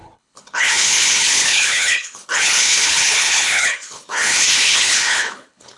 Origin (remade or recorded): remade